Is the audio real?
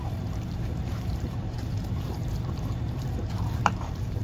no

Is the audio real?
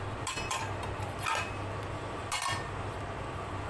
yes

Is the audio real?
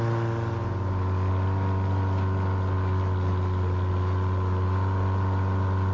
yes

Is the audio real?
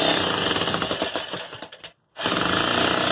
yes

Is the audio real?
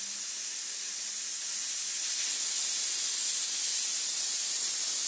yes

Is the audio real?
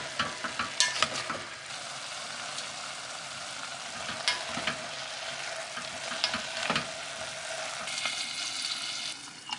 yes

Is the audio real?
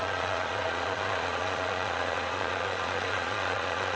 no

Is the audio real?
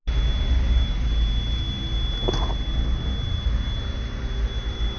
yes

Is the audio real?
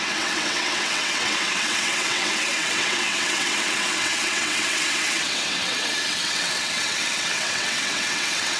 no